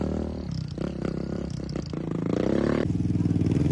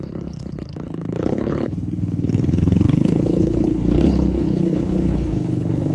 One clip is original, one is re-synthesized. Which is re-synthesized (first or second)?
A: second